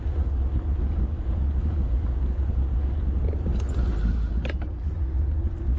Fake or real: real